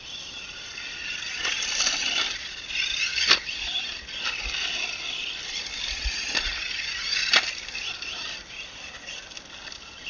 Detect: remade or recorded recorded